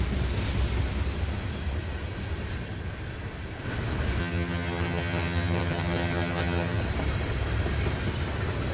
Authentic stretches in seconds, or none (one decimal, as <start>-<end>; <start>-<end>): 0.0-4.2; 6.8-8.7